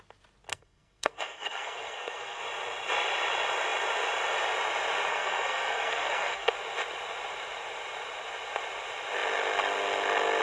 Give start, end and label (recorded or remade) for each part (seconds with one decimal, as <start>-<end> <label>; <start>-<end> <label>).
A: 0.0-0.5 recorded; 0.5-2.4 remade; 2.4-5.1 recorded; 5.1-6.5 remade; 6.5-10.4 recorded